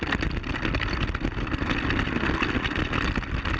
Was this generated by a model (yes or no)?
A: no